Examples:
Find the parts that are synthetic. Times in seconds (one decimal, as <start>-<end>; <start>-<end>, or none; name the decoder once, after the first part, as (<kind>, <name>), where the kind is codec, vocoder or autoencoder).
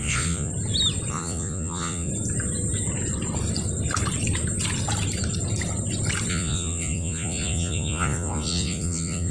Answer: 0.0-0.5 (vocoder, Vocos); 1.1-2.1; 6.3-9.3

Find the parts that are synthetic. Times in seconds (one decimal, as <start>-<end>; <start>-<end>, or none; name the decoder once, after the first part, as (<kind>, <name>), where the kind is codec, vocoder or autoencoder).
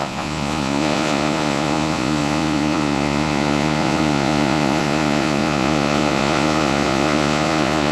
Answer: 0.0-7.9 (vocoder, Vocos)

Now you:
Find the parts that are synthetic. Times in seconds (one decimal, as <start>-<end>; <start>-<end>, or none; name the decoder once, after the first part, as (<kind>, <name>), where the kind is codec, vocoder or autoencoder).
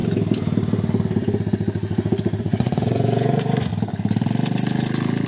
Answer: 2.4-3.7 (vocoder, Vocos)